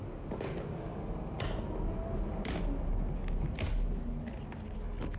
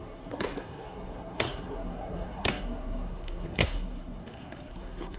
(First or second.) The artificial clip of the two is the second